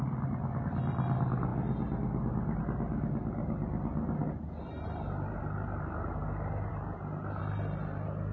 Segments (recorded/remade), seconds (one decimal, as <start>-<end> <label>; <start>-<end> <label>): 0.0-8.3 recorded